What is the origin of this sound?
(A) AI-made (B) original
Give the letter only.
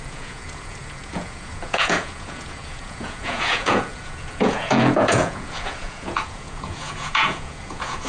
A